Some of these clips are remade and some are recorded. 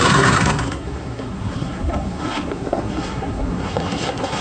remade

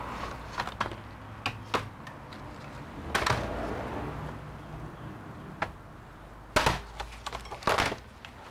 recorded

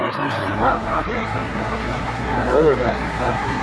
remade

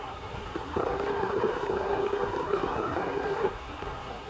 remade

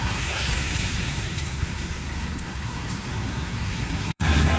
remade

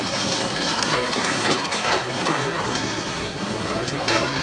remade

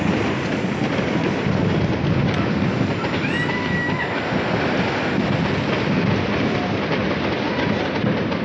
recorded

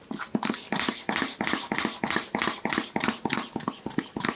recorded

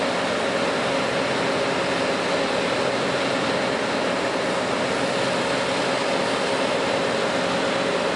recorded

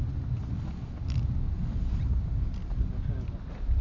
recorded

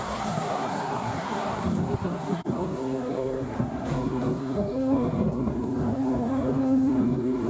remade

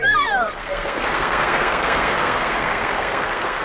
remade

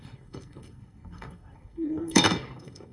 remade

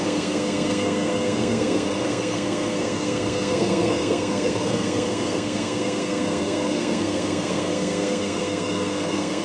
remade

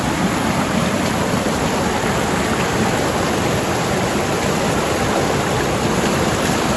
recorded